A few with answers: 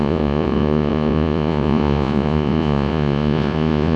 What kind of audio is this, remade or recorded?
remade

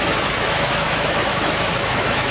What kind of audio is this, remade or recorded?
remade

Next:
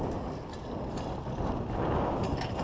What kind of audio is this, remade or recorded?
recorded